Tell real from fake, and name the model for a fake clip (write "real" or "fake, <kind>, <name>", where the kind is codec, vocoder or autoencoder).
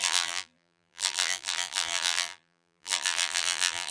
fake, vocoder, BigVGAN v2